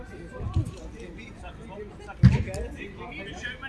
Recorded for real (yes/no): yes